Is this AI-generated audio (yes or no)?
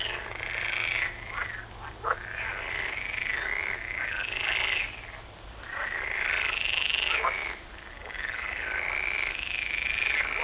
no